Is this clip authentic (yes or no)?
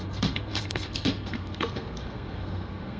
no